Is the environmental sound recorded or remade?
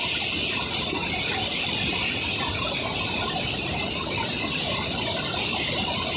recorded